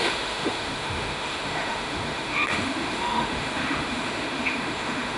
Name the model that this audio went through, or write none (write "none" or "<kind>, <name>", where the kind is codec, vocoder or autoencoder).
autoencoder, DAC-VAE